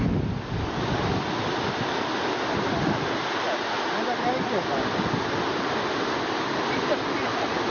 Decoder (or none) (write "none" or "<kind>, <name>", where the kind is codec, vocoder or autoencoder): none